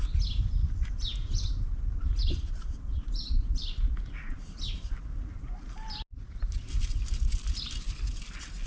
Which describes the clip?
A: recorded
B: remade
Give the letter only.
A